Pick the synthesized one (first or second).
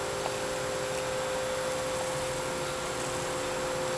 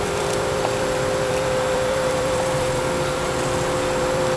second